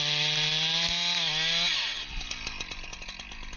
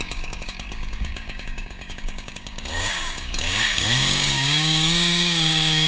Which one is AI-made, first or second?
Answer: second